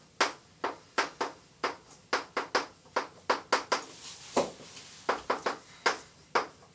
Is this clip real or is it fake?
real